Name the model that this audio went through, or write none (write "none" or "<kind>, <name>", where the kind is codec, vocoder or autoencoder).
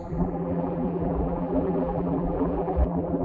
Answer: vocoder, BigVGAN v2